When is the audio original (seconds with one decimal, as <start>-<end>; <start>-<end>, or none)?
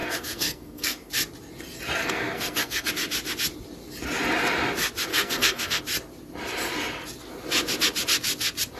1.1-2.0; 2.9-5.1; 5.8-8.8